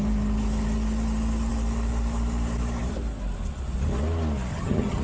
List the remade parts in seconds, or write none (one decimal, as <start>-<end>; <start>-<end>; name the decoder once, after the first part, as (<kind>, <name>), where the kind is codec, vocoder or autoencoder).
4.5-5.0 (vocoder, HiFi-GAN)